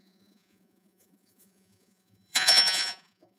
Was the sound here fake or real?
fake